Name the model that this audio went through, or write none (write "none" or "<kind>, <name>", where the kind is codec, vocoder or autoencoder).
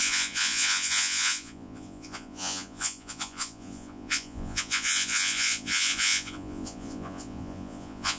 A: vocoder, Vocos